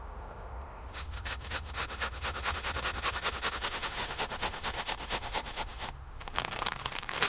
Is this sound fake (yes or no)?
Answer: yes